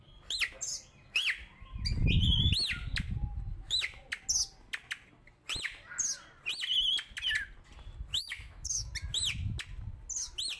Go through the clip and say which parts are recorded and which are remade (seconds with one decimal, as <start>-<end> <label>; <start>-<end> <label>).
0.0-8.1 recorded; 8.1-8.9 remade; 8.9-10.6 recorded